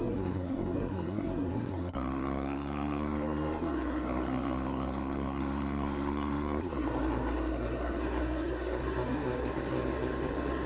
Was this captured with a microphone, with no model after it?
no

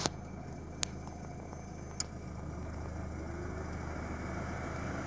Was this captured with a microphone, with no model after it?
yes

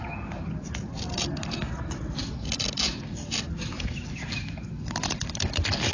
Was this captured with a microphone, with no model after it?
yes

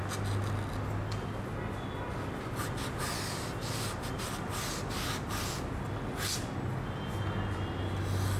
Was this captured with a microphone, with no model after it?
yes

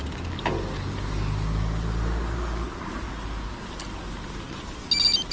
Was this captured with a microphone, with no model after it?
yes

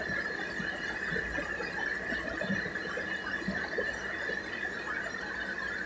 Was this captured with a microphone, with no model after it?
yes